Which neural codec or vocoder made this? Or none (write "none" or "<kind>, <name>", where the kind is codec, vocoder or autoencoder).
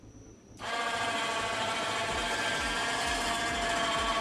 none